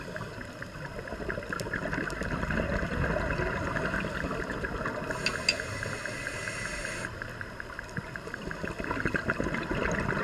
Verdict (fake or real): real